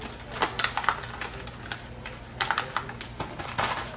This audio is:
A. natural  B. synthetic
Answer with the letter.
A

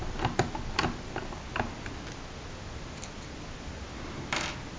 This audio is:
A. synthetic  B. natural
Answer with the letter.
B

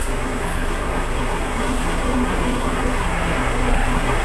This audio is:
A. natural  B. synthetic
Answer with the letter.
B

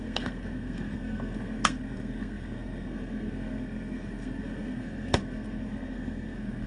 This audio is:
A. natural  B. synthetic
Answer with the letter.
B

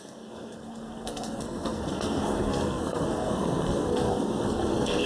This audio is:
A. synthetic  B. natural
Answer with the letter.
A